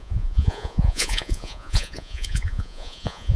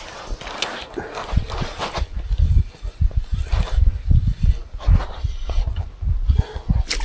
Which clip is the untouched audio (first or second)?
second